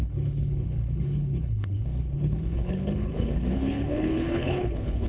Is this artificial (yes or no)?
yes